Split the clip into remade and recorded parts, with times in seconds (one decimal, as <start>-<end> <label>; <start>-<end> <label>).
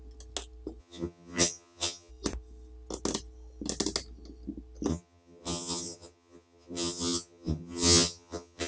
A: 0.0-0.8 recorded; 0.8-2.1 remade; 2.1-4.9 recorded; 4.9-8.7 remade